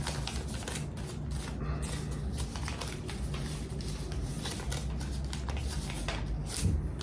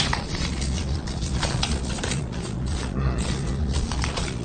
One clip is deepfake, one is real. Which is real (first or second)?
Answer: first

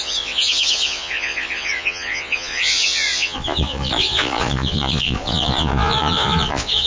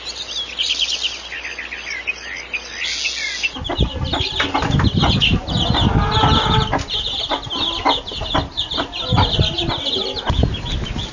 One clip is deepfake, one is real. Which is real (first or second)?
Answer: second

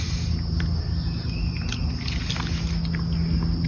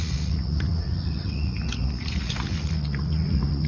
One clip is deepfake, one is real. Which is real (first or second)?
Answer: first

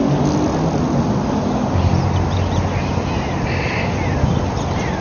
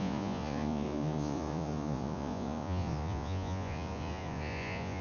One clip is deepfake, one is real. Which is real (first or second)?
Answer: first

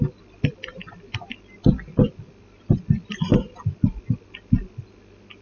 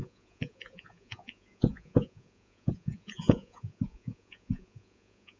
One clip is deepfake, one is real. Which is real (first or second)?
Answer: first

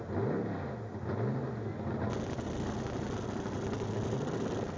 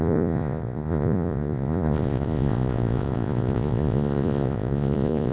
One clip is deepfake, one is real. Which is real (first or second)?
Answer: first